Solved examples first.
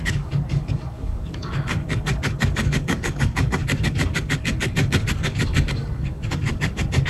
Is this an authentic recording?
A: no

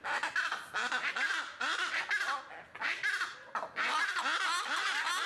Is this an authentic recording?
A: yes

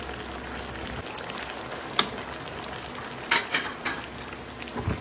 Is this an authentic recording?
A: yes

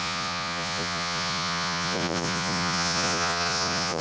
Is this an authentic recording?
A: no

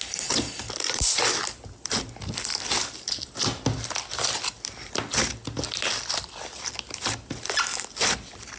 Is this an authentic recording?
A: yes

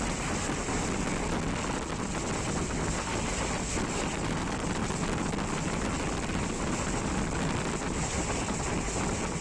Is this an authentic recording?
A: yes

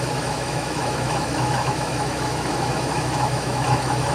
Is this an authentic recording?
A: no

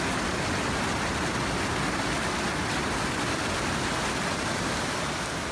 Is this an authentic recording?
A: yes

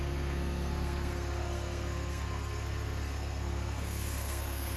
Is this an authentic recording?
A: no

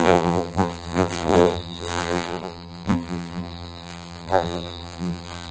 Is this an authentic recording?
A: no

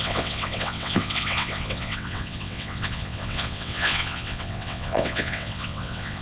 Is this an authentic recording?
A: no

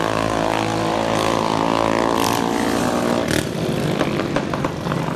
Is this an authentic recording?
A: yes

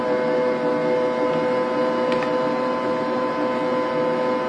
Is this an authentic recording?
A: yes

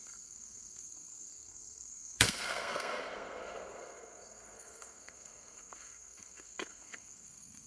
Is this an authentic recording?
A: no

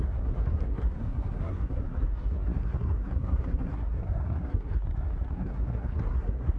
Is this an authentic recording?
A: no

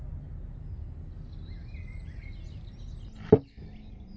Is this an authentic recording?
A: yes